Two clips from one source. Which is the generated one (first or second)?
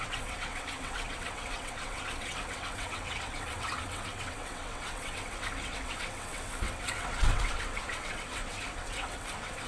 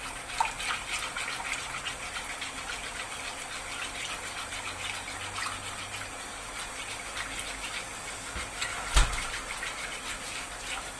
first